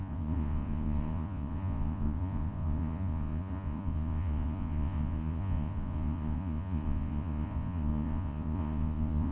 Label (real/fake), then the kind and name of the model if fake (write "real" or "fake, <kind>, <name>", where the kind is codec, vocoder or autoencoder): fake, vocoder, Vocos